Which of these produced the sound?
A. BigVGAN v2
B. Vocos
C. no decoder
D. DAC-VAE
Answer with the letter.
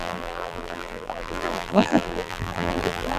A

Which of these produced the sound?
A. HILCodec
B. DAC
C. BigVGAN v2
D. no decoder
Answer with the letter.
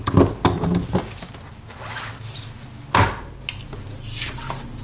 D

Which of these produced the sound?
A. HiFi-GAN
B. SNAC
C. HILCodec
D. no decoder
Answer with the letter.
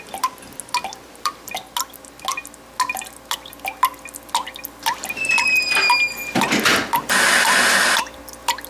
D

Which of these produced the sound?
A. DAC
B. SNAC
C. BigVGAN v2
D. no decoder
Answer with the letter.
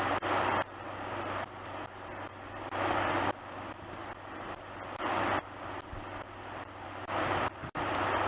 D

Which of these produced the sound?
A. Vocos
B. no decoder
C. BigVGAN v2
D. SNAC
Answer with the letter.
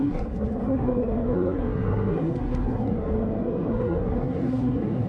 D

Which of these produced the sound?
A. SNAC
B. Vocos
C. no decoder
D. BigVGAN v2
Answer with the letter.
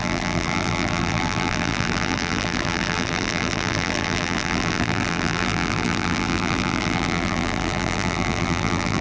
D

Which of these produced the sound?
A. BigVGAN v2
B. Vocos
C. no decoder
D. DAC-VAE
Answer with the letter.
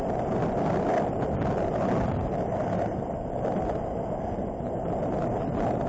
C